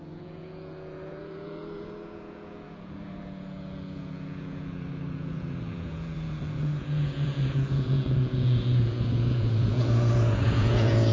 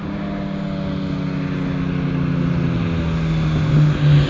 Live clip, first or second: second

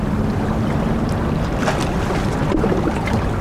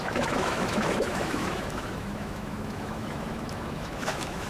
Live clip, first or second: first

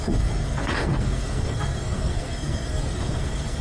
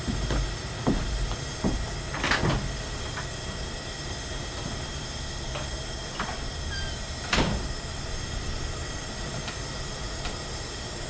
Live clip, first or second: second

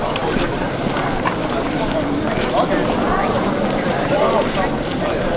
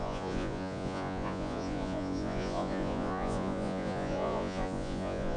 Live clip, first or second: first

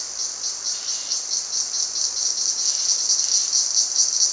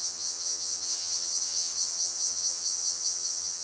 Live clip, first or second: first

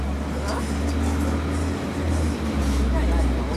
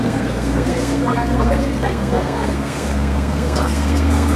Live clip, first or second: first